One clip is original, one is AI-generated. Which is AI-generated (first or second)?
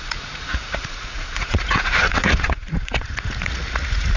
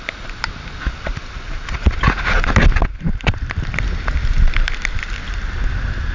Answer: first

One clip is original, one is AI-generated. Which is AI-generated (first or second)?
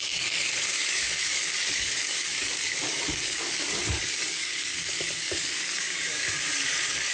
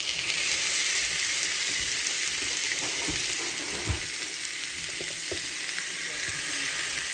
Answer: first